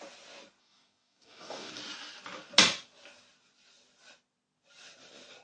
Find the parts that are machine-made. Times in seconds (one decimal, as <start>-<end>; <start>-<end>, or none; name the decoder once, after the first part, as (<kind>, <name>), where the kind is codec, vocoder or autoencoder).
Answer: 0.6-1.7 (codec, DAC)